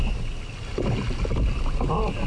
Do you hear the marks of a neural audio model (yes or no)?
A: no